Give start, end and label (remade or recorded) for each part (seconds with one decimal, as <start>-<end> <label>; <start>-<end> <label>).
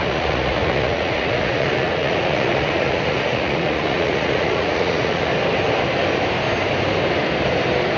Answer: 0.0-5.3 remade; 5.3-8.0 recorded